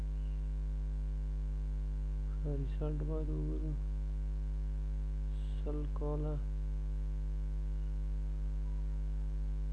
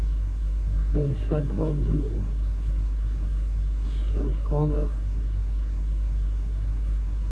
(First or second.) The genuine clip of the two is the first